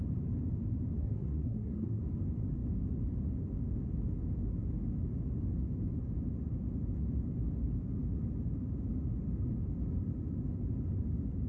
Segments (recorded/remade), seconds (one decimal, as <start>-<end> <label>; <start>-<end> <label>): 0.0-1.0 recorded; 1.0-2.0 remade; 2.0-11.5 recorded